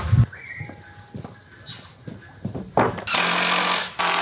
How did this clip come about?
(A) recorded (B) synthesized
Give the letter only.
A